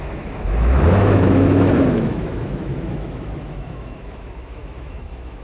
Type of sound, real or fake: fake